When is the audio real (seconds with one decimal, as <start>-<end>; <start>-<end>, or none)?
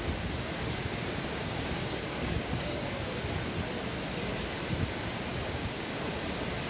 0.0-0.8; 3.2-5.3; 6.0-6.7